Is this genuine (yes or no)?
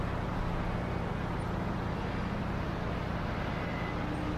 yes